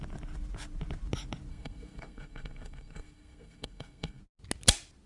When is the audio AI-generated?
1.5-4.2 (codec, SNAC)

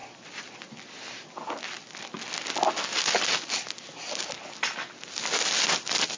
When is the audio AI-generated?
none